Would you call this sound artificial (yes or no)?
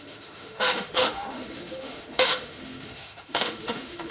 yes